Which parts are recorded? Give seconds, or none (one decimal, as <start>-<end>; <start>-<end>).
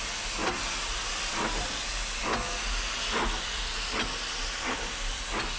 0.0-5.6